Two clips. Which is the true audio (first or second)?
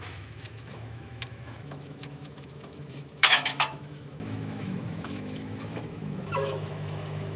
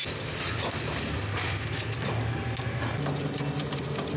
second